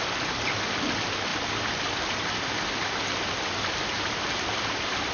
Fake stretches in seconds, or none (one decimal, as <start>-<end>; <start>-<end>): none